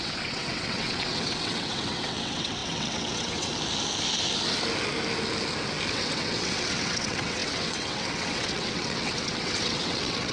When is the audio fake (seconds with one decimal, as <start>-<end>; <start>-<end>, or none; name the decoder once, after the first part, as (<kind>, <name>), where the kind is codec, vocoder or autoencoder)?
0.0-3.5 (vocoder, WaveNeXt); 5.9-10.3

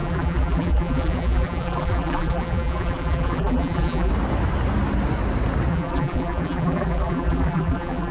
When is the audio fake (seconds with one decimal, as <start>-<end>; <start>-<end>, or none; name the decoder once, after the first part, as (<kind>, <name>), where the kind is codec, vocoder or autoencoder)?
0.0-4.1 (vocoder, BigVGAN v2); 5.7-8.1

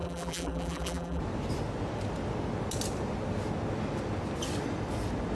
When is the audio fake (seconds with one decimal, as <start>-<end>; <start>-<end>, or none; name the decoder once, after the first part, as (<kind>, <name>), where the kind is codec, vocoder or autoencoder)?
0.0-1.2 (vocoder, BigVGAN v2)

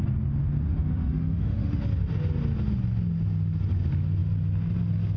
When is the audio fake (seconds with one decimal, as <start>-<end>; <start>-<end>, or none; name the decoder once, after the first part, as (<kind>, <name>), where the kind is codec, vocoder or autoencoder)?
0.7-1.8 (autoencoder, DAC-VAE)

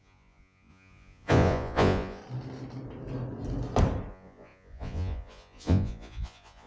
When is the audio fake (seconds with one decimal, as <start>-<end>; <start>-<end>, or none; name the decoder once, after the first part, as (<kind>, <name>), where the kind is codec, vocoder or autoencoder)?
0.0-2.2 (vocoder, Vocos); 4.1-6.7

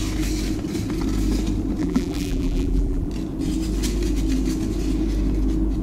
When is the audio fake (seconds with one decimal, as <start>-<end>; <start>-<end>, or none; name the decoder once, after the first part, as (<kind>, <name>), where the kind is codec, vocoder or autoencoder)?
1.8-3.1 (vocoder, BigVGAN v2)